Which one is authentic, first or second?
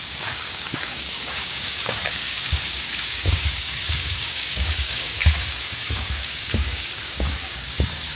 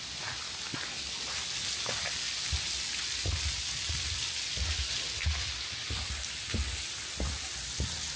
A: second